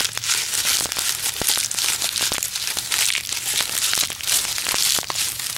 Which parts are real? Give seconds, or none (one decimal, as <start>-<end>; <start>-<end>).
0.0-5.6